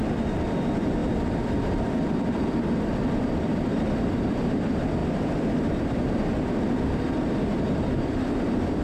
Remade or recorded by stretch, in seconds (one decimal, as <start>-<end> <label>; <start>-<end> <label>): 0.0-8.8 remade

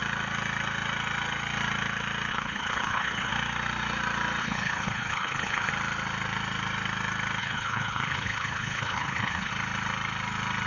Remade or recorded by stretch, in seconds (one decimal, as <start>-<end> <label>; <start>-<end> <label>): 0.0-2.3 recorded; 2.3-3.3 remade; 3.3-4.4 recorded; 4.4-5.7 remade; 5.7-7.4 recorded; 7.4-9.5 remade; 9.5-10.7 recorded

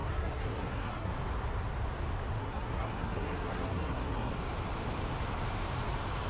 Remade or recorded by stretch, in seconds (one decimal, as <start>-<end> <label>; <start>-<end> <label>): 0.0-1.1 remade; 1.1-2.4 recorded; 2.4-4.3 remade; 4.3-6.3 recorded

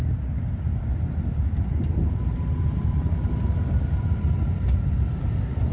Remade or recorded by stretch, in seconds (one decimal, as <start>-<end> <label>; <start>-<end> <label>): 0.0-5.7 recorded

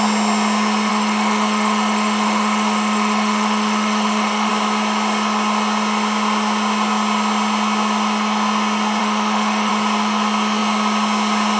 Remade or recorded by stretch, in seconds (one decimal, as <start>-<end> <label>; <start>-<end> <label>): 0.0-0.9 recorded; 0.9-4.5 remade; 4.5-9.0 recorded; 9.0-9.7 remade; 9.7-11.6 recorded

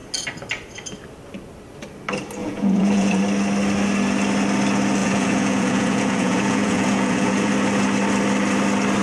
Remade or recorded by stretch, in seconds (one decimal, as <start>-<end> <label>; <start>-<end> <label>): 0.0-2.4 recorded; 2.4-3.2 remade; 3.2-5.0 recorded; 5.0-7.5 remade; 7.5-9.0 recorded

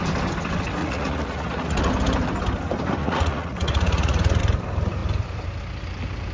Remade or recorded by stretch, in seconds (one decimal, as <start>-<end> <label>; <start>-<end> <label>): 0.0-0.8 recorded; 0.8-1.9 remade; 1.9-3.0 recorded; 3.0-4.4 remade; 4.4-6.3 recorded